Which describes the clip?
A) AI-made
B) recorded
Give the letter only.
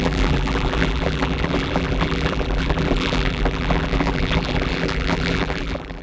A